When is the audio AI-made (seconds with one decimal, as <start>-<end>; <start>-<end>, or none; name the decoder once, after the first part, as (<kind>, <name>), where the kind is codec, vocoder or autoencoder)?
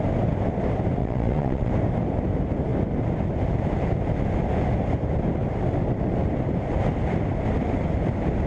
1.0-1.7 (vocoder, WaveNeXt)